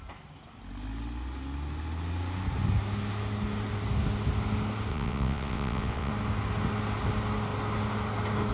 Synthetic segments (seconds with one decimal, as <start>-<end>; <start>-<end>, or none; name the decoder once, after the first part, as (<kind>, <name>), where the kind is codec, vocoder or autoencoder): 4.9-6.1 (vocoder, WaveNeXt)